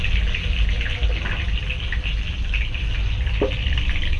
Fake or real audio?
real